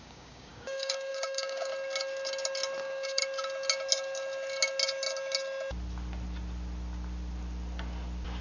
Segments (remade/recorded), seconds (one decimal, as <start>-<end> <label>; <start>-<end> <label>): 0.0-1.7 remade; 1.7-2.8 recorded; 2.8-3.2 remade; 3.2-8.4 recorded